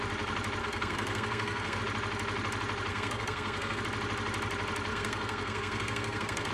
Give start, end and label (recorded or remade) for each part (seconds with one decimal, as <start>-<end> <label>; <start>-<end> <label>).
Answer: 0.0-0.6 recorded; 0.6-1.8 remade; 1.8-2.9 recorded; 2.9-3.8 remade; 3.8-4.9 recorded; 4.9-6.5 remade